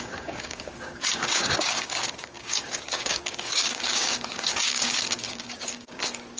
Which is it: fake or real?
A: fake